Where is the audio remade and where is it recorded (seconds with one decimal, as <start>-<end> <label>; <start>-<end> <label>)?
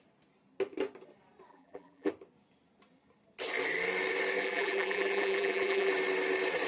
0.0-1.5 recorded; 1.5-2.1 remade; 2.1-4.4 recorded; 4.4-5.9 remade; 5.9-6.7 recorded